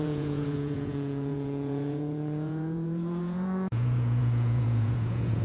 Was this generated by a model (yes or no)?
yes